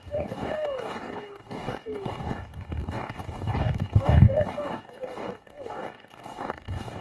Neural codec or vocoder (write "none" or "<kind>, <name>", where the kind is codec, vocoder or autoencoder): codec, DAC